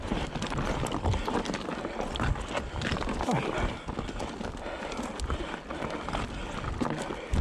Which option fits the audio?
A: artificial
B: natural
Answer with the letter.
B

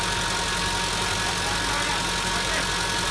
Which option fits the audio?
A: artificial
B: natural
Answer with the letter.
B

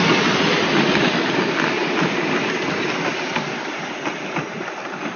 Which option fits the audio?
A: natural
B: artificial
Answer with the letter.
B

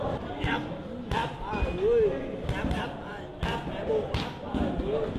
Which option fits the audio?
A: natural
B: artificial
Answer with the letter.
A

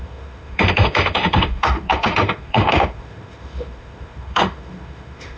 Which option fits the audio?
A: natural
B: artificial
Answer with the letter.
B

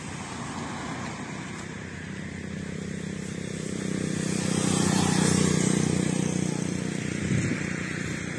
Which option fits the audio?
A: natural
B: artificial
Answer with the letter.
A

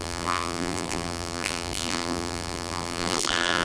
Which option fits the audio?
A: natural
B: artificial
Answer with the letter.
B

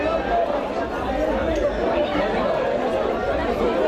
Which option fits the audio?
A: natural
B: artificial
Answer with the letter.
A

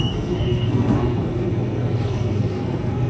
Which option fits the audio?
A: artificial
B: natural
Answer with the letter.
A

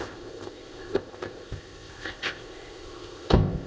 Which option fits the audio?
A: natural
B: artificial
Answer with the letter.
B